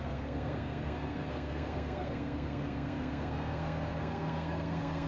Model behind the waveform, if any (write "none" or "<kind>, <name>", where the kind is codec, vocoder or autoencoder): codec, SNAC